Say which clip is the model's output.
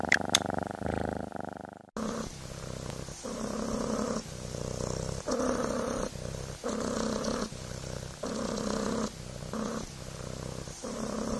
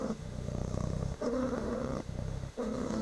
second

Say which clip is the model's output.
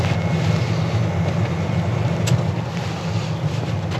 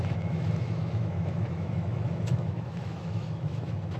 second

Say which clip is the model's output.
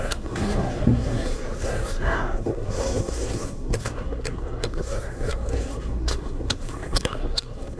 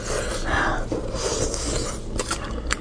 first